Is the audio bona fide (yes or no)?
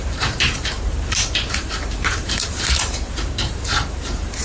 no